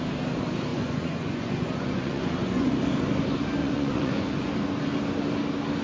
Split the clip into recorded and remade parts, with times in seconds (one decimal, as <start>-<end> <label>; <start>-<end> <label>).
0.0-0.7 recorded; 0.7-2.7 remade; 2.7-3.6 recorded; 3.6-4.5 remade; 4.5-5.8 recorded